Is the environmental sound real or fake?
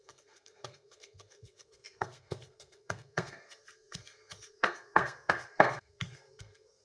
fake